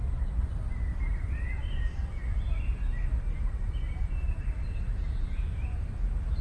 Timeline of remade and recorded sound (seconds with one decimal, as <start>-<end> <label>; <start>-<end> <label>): 0.0-6.4 recorded